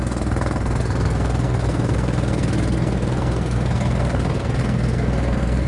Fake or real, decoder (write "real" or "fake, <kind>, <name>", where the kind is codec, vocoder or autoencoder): fake, codec, SNAC